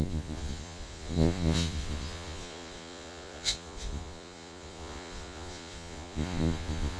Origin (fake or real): fake